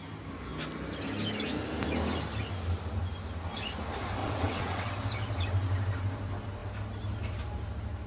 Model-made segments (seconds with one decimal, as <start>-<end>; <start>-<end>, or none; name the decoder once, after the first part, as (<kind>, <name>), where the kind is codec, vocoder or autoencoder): 4.2-4.9 (vocoder, WaveNeXt)